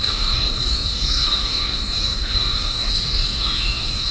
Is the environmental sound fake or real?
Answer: fake